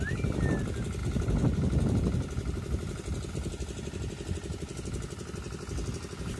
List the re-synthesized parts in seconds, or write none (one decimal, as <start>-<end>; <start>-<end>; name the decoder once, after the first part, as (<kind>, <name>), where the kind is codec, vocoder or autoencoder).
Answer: none